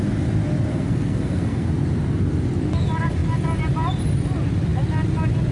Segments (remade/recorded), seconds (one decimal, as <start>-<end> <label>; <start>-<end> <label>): 0.0-0.7 recorded; 0.7-1.7 remade; 1.7-5.5 recorded